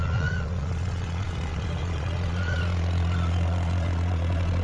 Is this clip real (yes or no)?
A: no